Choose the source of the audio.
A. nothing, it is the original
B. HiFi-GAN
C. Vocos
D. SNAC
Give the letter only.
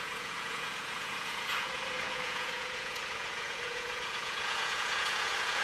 C